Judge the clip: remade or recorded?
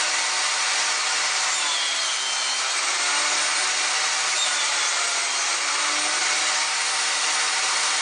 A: recorded